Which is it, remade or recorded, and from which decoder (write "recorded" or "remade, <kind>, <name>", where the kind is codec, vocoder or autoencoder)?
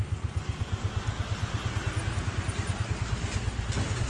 recorded